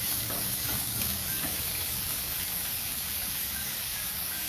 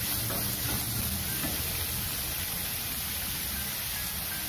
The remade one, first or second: first